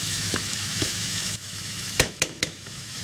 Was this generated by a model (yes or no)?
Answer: yes